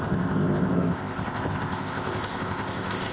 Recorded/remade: remade